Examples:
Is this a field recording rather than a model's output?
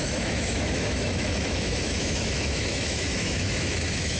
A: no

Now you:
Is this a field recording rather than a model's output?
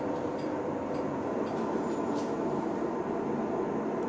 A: yes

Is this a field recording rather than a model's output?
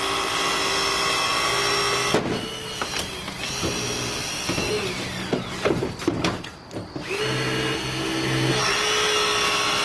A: yes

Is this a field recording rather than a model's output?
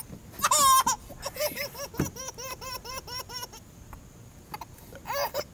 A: yes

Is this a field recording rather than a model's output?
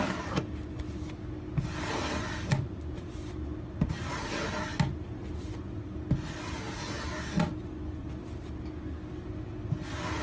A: yes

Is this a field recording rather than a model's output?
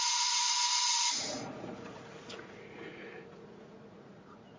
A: no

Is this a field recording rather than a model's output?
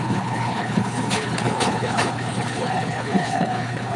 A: no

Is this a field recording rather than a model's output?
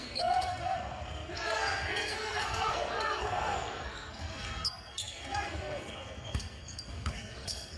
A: no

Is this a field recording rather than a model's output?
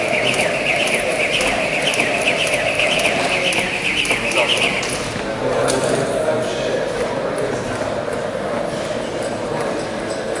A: yes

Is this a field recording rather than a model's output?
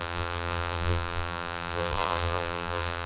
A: no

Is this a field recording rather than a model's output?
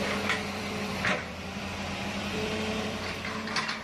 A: no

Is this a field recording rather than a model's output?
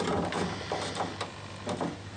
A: yes